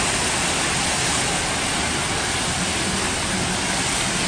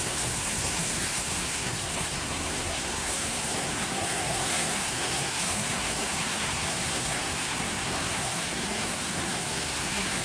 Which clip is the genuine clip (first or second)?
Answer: first